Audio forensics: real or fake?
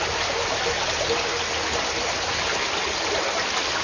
real